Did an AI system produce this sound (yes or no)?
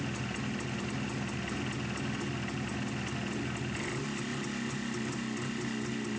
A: no